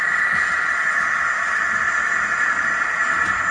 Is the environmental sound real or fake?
real